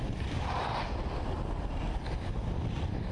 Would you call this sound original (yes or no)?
yes